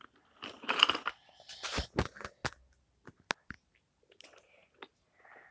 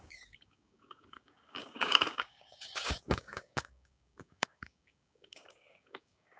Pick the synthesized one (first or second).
second